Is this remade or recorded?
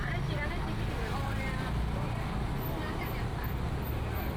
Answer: recorded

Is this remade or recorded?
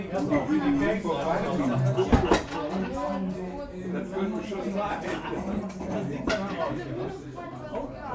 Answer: recorded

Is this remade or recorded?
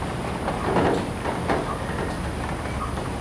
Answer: recorded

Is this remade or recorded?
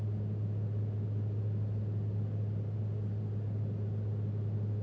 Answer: recorded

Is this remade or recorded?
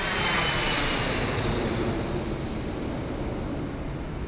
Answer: recorded